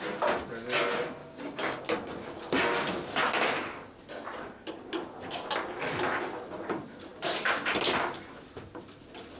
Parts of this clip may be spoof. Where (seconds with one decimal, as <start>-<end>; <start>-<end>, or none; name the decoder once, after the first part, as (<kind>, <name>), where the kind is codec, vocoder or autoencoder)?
1.2-1.8 (codec, DAC)